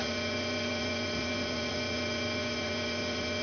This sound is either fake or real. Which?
fake